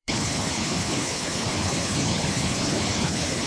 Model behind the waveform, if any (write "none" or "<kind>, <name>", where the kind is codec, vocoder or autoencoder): codec, HILCodec